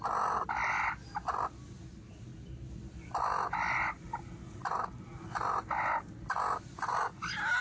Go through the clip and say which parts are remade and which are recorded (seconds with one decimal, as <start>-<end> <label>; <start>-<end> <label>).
0.0-7.6 recorded